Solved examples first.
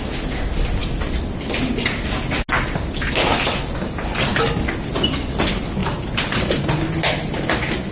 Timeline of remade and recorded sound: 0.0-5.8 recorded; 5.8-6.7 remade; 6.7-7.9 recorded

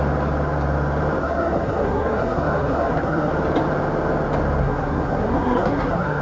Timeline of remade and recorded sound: 0.0-1.2 recorded; 1.2-3.3 remade; 3.3-4.6 recorded; 4.6-6.2 remade

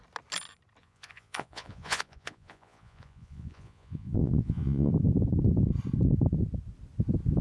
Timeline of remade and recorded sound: 0.0-0.8 recorded; 0.8-4.9 remade; 4.9-7.4 recorded

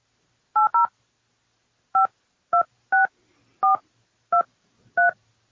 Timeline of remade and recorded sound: 0.0-5.5 recorded

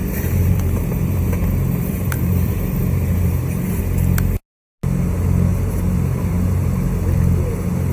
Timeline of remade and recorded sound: 0.0-3.8 remade; 3.8-5.5 recorded; 5.5-7.5 remade; 7.5-7.9 recorded

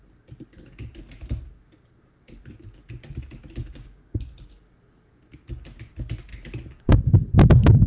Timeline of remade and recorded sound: 0.0-3.6 recorded; 3.6-4.3 remade; 4.3-7.9 recorded